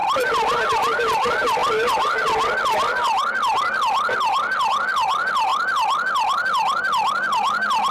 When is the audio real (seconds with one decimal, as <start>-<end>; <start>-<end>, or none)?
0.0-7.9